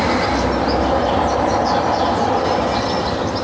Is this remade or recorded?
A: recorded